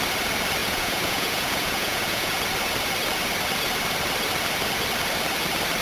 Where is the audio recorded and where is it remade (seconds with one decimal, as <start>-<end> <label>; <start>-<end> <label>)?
0.0-0.6 recorded; 0.6-2.4 remade; 2.4-5.8 recorded